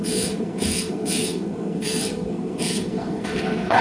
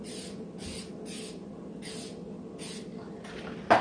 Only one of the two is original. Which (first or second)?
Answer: second